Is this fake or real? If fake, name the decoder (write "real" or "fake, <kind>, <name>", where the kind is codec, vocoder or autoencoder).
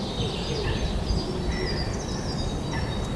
real